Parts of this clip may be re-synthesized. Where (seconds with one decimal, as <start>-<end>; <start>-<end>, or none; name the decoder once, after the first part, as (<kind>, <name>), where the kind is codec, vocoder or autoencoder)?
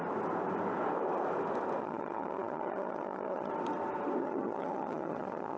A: 1.8-3.5 (vocoder, HiFi-GAN); 4.2-5.6